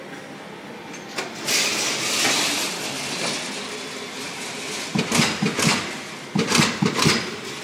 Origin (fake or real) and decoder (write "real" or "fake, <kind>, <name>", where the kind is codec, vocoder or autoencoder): real